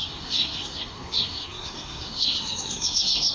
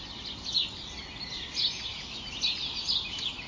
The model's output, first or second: first